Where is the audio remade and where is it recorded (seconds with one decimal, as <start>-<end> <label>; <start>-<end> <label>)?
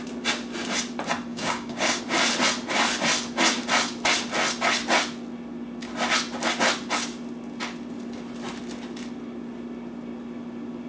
0.0-1.3 recorded; 1.3-2.0 remade; 2.0-10.9 recorded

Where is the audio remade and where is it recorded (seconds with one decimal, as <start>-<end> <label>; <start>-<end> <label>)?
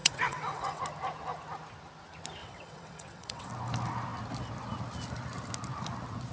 0.0-0.8 remade; 0.8-2.4 recorded; 2.4-3.5 remade; 3.5-6.3 recorded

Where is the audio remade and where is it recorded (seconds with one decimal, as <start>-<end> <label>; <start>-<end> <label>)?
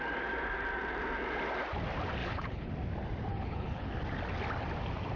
0.0-2.2 recorded; 2.2-2.7 remade; 2.7-3.3 recorded; 3.3-3.9 remade; 3.9-5.2 recorded